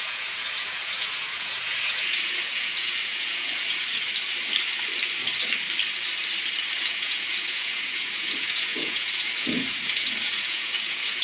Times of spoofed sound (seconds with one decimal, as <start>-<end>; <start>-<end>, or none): 0.0-3.9; 6.9-11.2

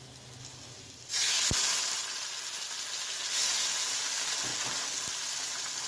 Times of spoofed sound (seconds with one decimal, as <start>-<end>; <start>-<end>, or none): none

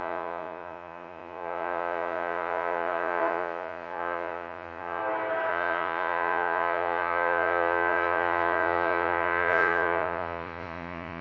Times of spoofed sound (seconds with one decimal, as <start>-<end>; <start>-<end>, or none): 0.0-5.0; 5.5-11.2

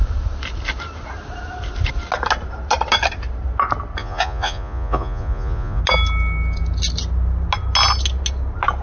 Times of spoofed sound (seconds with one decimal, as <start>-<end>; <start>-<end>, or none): 4.0-5.8